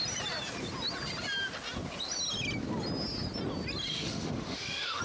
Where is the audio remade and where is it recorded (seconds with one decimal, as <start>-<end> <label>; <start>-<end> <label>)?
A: 0.0-3.9 recorded; 3.9-5.0 remade